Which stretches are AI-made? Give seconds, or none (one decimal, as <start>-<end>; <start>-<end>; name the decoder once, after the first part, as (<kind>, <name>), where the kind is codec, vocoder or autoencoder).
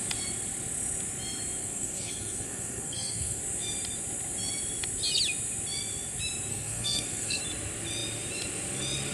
1.6-3.4 (codec, SNAC); 6.5-7.4